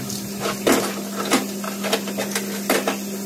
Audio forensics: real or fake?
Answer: real